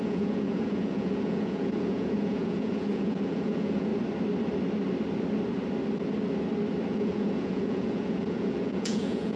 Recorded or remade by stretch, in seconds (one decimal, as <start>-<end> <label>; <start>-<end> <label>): 0.0-3.9 remade; 3.9-6.9 recorded; 6.9-9.4 remade